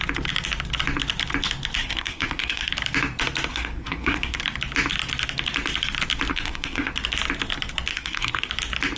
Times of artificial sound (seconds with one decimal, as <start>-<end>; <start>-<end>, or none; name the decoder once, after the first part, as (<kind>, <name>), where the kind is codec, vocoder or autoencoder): 1.8-2.7 (codec, SNAC); 3.5-4.4; 6.3-6.9; 7.9-8.5